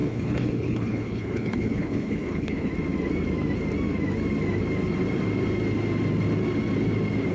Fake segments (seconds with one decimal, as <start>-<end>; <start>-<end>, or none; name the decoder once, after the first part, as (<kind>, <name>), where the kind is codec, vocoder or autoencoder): 0.0-2.7 (codec, HILCodec)